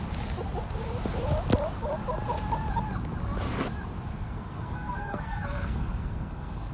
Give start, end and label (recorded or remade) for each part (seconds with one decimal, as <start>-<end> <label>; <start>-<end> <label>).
0.0-4.1 recorded; 4.1-6.7 remade